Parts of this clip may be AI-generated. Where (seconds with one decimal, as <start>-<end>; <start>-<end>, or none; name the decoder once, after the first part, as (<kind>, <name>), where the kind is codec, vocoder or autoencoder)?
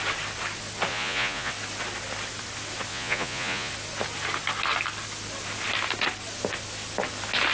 0.9-1.5 (vocoder, Vocos); 2.9-3.7